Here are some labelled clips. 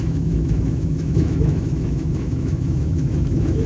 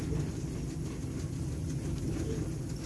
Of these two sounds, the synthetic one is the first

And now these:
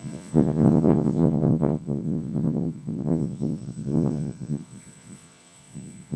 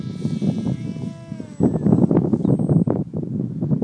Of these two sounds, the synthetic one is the first